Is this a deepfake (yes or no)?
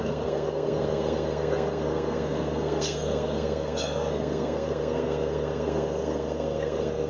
yes